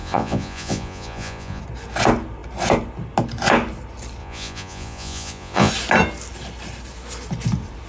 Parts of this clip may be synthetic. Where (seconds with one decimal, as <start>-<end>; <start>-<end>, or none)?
0.0-1.6; 4.2-5.7